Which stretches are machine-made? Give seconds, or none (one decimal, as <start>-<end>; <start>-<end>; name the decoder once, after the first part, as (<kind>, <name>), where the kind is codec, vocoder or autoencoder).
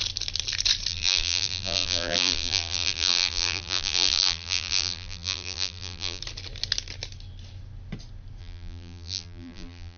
0.9-6.2 (vocoder, BigVGAN v2); 8.4-10.0